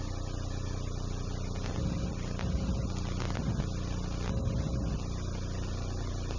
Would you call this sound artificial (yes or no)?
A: no